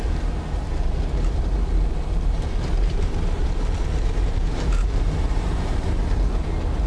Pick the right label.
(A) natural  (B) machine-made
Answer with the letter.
B